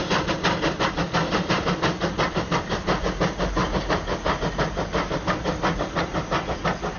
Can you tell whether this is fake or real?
real